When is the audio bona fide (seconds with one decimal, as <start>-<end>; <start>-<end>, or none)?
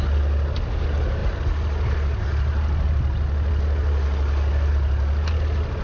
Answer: 0.0-5.8